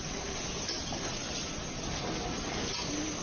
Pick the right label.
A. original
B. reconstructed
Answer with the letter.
B